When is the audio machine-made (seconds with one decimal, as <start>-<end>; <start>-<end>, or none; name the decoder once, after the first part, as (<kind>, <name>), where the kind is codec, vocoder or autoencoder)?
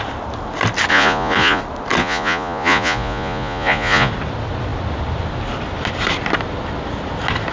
0.9-1.6 (vocoder, Vocos); 2.0-4.1